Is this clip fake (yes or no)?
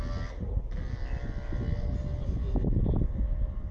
no